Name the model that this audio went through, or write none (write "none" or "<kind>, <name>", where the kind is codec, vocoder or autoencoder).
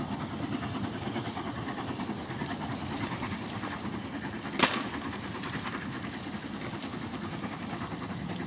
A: none